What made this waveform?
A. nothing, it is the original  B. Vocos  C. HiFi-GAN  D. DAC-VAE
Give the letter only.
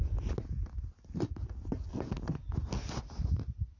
A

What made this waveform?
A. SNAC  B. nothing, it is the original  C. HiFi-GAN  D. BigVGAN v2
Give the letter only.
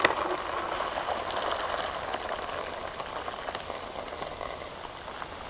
B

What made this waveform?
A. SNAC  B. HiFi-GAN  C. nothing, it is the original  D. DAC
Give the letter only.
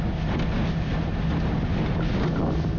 C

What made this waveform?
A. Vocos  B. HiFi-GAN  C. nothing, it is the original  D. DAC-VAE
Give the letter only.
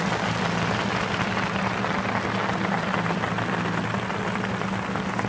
C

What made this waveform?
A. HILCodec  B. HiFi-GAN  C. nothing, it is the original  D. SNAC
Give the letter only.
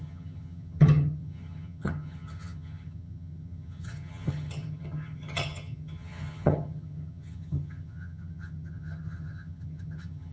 B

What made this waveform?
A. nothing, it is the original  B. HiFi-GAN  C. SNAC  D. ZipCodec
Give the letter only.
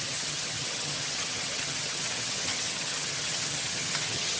B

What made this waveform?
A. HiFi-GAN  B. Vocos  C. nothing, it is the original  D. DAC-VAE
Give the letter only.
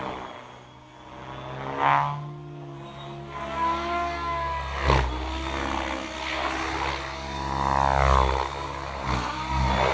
C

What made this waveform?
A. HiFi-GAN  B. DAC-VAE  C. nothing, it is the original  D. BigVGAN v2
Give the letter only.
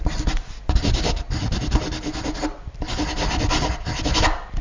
C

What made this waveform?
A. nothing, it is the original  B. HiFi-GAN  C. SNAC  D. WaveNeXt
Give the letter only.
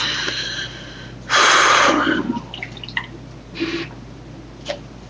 A